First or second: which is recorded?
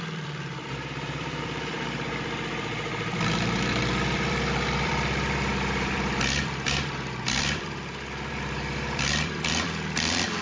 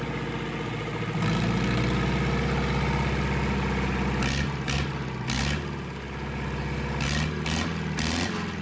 second